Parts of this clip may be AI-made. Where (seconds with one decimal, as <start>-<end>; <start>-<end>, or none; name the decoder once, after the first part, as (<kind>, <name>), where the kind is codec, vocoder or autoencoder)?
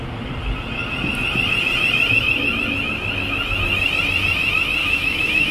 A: 4.8-5.5 (autoencoder, DAC-VAE)